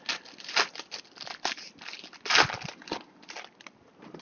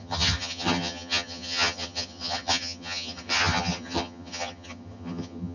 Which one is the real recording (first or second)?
first